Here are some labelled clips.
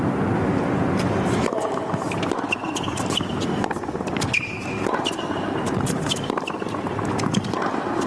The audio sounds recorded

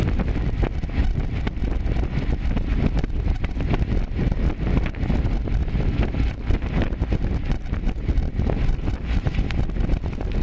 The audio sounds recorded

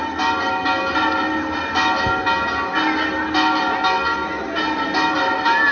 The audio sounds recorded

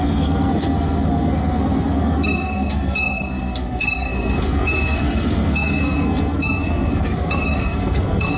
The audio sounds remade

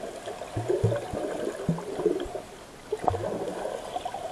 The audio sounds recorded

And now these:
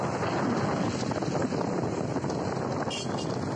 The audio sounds recorded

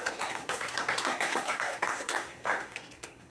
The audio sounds remade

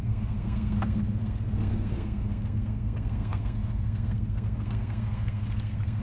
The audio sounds remade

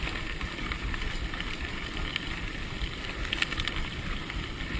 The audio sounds recorded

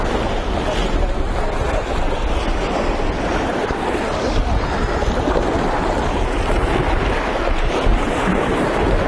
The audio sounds recorded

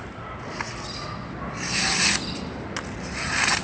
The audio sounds recorded